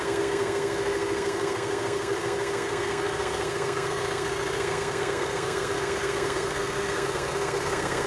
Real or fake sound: fake